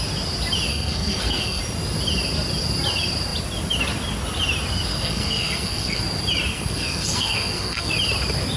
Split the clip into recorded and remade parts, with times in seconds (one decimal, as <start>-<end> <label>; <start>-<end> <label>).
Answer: 0.0-0.7 recorded; 0.7-1.6 remade; 1.6-4.9 recorded; 4.9-6.0 remade; 6.0-6.5 recorded; 6.5-7.9 remade; 7.9-8.6 recorded